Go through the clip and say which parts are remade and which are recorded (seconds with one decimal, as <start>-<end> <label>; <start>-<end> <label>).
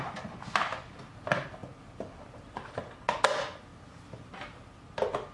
0.0-5.3 recorded